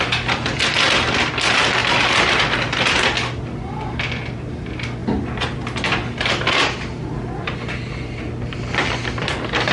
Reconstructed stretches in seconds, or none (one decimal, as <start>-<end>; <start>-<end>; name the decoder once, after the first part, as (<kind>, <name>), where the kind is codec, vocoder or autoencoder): none